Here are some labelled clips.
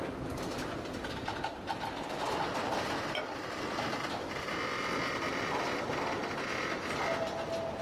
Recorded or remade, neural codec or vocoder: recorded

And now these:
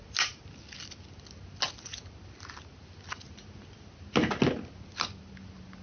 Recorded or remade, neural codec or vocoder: recorded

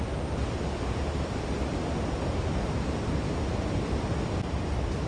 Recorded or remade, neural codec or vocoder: recorded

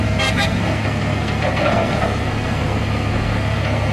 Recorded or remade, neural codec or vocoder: remade, codec, SNAC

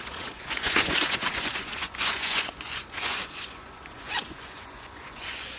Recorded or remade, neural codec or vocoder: remade, vocoder, Vocos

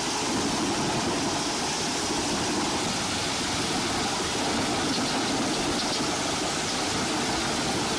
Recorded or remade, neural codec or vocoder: recorded